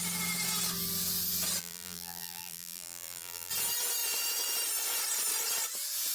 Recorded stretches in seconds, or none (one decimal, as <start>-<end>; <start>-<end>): 0.0-1.6; 3.5-6.1